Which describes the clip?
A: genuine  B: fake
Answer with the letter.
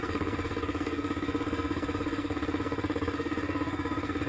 B